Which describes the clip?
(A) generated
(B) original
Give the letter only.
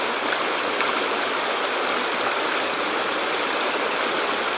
B